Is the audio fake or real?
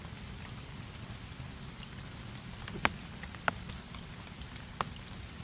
real